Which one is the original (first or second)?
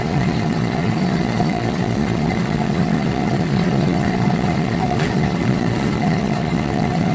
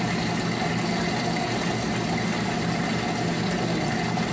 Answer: second